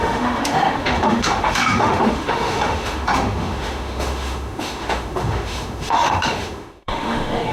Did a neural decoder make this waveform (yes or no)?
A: yes